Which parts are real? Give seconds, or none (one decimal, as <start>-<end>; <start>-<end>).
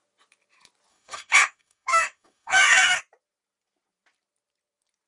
0.0-0.9; 3.0-5.1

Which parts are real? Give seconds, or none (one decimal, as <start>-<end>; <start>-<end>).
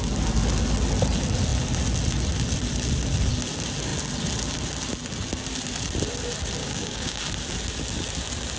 0.0-6.6; 7.2-8.6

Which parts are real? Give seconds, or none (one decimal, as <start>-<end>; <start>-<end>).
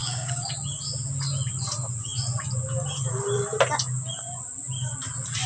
0.5-5.5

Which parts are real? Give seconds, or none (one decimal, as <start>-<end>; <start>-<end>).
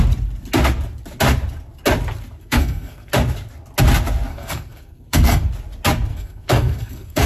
0.0-2.4; 3.1-4.3; 5.5-6.1